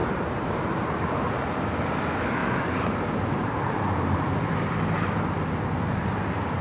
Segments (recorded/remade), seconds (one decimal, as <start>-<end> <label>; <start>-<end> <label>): 0.0-0.5 remade; 0.5-2.4 recorded; 2.4-4.4 remade; 4.4-6.6 recorded